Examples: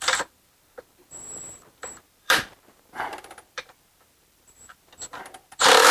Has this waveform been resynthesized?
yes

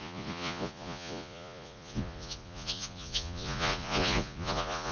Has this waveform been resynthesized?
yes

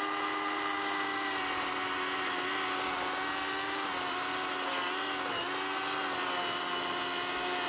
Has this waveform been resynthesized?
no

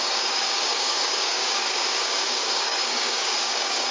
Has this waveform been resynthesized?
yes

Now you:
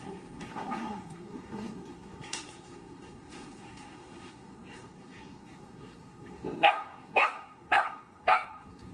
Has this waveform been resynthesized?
yes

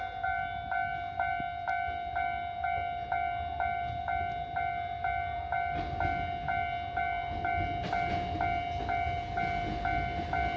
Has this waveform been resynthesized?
no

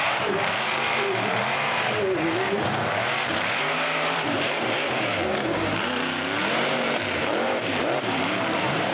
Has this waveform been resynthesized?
yes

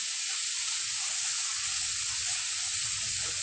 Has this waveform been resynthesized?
yes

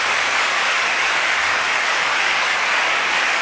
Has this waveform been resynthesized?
yes